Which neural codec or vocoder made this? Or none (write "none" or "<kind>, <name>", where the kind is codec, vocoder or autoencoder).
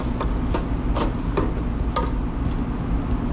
none